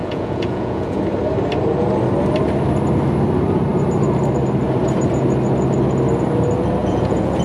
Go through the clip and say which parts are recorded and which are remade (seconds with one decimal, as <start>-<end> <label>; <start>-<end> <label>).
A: 0.0-1.0 remade; 1.0-6.8 recorded; 6.8-7.4 remade